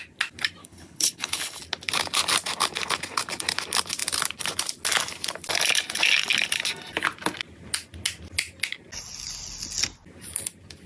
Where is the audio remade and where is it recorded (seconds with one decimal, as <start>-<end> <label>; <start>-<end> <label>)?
0.0-0.6 recorded; 0.6-1.6 remade; 1.6-10.9 recorded